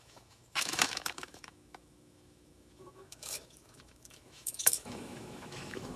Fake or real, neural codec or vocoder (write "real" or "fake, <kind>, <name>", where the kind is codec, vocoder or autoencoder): fake, autoencoder, DAC-VAE